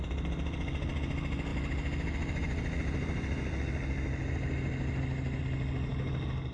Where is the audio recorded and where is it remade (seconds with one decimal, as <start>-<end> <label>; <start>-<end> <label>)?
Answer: 0.0-6.5 recorded